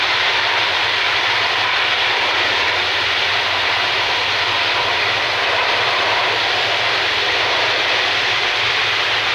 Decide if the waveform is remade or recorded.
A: remade